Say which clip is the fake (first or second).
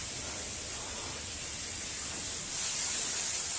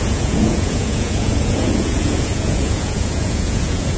second